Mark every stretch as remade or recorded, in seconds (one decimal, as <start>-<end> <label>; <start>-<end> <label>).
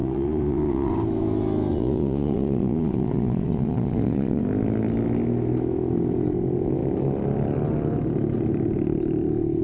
0.0-0.9 remade; 0.9-1.7 recorded; 1.7-4.4 remade; 4.4-9.6 recorded